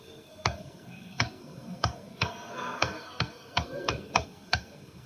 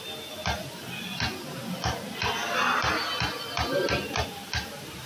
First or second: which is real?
second